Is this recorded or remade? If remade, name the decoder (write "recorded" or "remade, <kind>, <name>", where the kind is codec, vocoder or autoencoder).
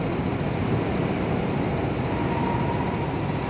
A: recorded